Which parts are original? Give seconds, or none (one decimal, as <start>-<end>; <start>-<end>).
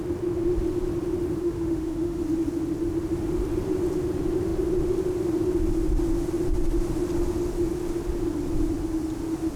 0.0-1.4; 2.2-9.6